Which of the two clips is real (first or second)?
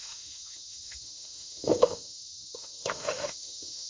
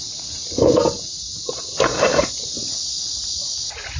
second